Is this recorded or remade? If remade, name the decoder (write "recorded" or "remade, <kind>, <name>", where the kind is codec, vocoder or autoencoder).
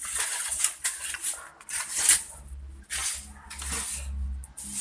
recorded